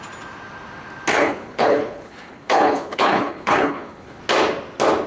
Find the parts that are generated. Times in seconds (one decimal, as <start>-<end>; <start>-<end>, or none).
1.1-4.2